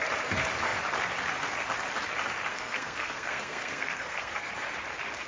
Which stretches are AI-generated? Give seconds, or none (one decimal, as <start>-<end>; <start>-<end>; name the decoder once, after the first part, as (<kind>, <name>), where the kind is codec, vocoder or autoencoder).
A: 2.5-4.5 (codec, SNAC)